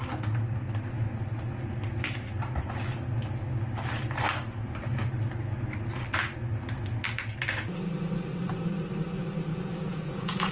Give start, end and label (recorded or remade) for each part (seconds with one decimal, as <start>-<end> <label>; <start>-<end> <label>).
0.0-9.5 recorded; 9.5-10.5 remade